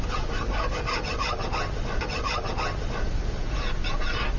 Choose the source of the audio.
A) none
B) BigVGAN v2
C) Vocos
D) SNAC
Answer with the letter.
A